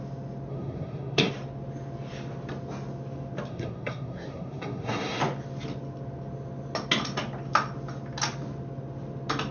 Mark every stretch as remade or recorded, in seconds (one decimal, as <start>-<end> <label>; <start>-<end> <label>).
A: 0.0-0.5 recorded; 0.5-1.3 remade; 1.3-3.5 recorded; 3.5-5.2 remade; 5.2-9.5 recorded

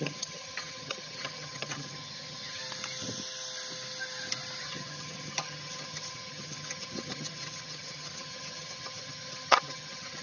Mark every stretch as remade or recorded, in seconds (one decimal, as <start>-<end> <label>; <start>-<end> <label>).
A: 0.0-2.6 remade; 2.6-4.6 recorded; 4.6-10.2 remade

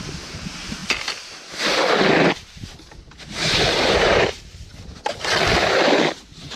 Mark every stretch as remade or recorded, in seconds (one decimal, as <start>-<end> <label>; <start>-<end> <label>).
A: 0.0-0.8 remade; 0.8-3.3 recorded; 3.3-4.7 remade; 4.7-6.6 recorded

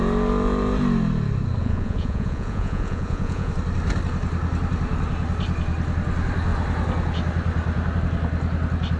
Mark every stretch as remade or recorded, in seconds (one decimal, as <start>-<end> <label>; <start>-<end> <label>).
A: 0.0-1.6 recorded; 1.6-3.5 remade; 3.5-9.0 recorded

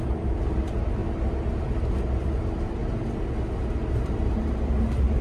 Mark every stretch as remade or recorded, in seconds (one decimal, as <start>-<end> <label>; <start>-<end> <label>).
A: 0.0-1.0 remade; 1.0-1.6 recorded; 1.6-2.8 remade; 2.8-3.9 recorded; 3.9-5.2 remade